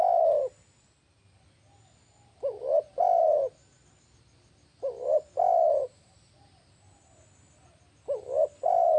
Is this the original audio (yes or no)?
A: yes